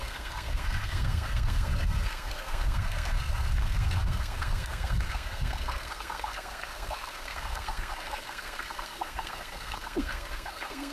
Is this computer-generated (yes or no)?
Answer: yes